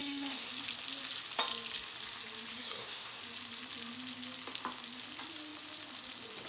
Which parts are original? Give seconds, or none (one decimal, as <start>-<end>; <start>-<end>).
0.5-2.5; 3.2-6.5

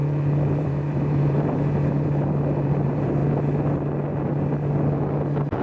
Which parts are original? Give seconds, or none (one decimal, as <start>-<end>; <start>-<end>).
0.0-0.6; 3.2-5.6

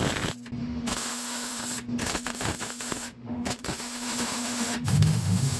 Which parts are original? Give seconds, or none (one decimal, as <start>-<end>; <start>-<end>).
0.0-0.6; 1.6-2.0

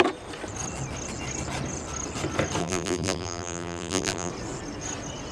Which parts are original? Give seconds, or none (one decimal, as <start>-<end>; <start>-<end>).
0.0-2.6; 4.3-5.3

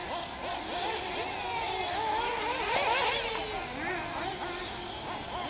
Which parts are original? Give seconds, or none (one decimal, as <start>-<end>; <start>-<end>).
0.0-5.5